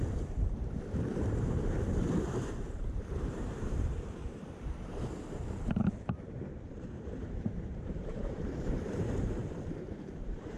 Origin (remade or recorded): remade